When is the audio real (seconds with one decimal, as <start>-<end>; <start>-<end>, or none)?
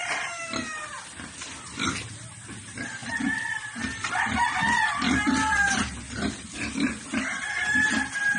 0.0-2.1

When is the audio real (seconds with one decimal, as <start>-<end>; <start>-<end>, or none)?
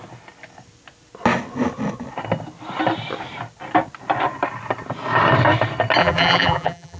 0.0-6.0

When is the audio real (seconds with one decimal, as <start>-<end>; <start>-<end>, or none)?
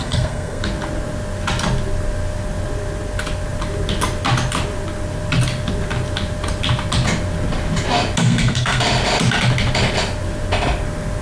0.6-8.2; 8.8-11.2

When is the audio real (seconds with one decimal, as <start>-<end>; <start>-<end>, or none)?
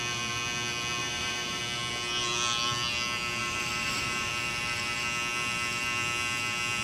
0.0-1.0; 1.6-3.4; 4.3-6.8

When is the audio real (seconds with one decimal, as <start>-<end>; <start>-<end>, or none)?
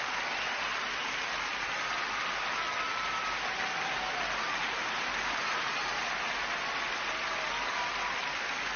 0.0-8.8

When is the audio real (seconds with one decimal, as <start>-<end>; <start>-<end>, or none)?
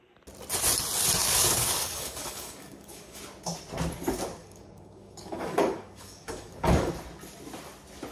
0.0-1.2; 3.2-4.4; 6.9-8.1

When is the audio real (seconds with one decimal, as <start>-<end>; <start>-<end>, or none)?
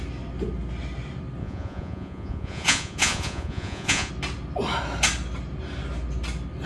0.0-1.4; 4.1-6.7